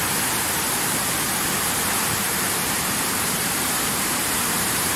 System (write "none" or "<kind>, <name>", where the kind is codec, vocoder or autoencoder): vocoder, BigVGAN v2